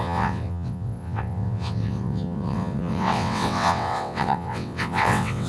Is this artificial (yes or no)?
yes